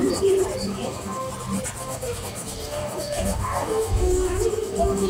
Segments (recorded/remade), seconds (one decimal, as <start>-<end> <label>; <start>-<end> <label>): 0.0-0.7 recorded; 0.7-1.3 remade; 1.3-1.8 recorded; 1.8-5.1 remade